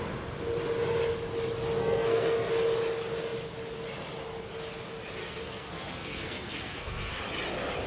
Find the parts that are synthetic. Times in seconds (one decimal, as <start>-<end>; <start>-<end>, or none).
1.8-2.5; 5.2-7.2

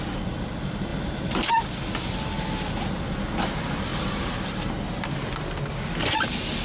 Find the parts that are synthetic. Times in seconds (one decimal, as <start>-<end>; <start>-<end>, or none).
none